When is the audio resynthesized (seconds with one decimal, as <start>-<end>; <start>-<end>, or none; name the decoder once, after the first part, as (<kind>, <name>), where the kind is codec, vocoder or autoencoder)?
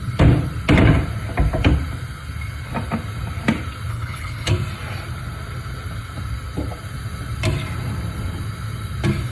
3.9-4.5 (codec, HILCodec)